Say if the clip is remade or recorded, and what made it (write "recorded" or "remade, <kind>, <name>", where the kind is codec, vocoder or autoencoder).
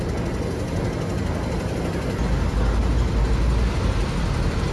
recorded